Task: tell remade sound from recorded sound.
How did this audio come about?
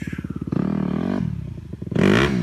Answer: recorded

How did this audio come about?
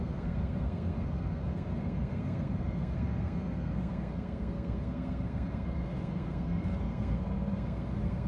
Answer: remade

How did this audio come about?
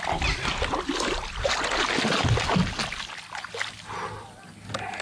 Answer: recorded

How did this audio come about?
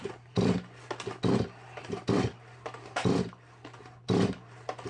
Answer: remade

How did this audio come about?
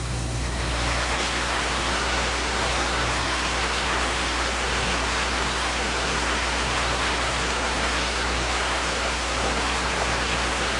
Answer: remade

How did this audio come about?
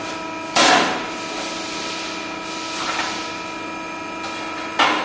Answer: recorded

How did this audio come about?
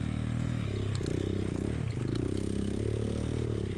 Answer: recorded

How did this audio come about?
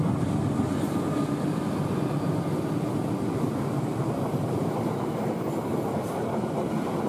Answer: recorded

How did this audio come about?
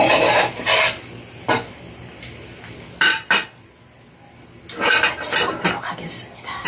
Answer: recorded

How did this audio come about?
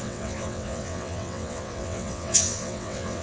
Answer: remade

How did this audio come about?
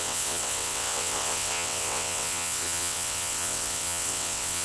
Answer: remade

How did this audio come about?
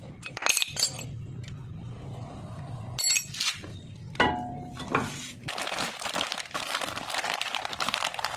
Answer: recorded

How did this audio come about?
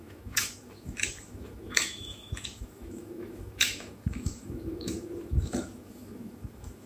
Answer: remade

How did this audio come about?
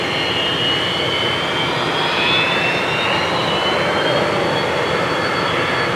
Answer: recorded